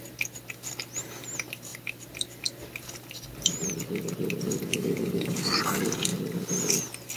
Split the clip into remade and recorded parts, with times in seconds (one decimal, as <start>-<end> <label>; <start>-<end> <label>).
0.0-4.7 recorded; 4.7-5.6 remade; 5.6-7.2 recorded